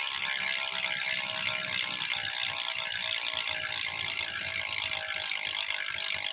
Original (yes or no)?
yes